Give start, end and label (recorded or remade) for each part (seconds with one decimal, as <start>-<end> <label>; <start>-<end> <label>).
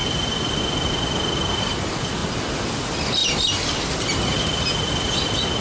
0.0-0.6 remade; 0.6-3.2 recorded; 3.2-4.2 remade; 4.2-5.6 recorded